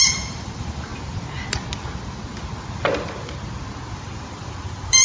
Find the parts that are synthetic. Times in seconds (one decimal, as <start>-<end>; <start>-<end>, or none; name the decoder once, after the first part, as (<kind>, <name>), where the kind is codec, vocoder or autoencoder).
0.0-0.9 (vocoder, BigVGAN v2); 3.9-5.0